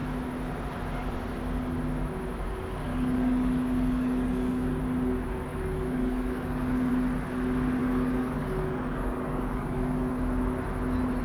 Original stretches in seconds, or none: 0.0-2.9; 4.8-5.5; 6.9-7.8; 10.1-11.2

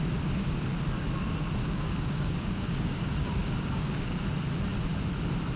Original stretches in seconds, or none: 0.0-1.6; 4.2-5.6

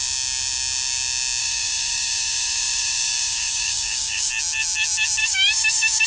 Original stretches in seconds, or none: 0.0-1.4; 4.3-5.2

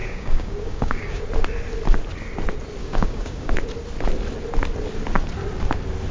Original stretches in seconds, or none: 1.2-2.8; 3.5-6.1

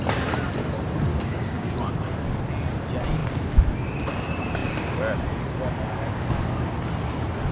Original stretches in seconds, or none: 0.0-1.1; 1.9-7.5